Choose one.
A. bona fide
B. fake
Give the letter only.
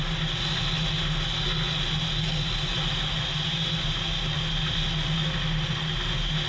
A